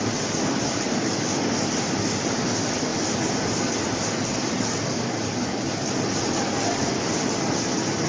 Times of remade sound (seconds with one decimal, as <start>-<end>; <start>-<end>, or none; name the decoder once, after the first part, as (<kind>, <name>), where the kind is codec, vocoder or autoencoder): none